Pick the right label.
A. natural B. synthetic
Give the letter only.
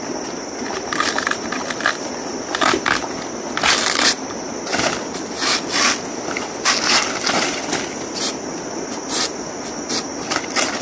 A